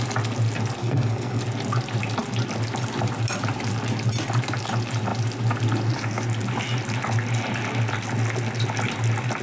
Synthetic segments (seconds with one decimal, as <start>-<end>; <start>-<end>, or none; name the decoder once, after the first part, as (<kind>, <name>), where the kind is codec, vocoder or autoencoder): 0.8-1.4 (codec, SNAC)